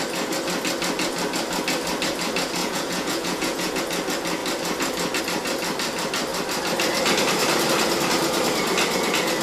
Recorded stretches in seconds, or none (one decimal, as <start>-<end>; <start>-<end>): 0.0-2.6; 3.8-9.4